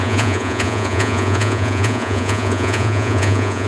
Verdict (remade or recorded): remade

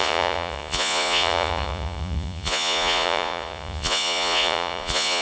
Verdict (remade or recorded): remade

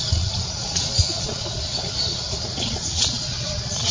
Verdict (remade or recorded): remade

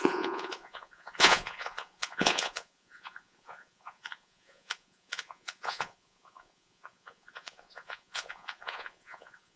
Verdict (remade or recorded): remade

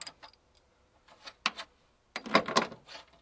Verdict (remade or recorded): recorded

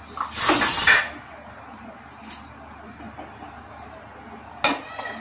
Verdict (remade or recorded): recorded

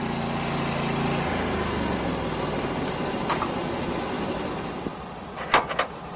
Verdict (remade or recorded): recorded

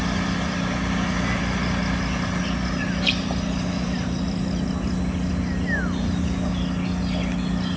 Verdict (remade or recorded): recorded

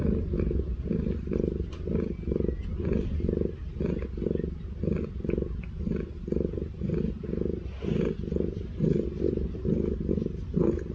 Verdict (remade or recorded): recorded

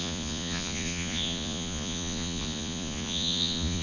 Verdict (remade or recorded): remade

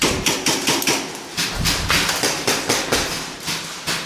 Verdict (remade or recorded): recorded